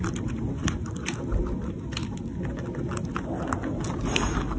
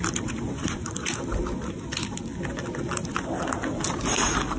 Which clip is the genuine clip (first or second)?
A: first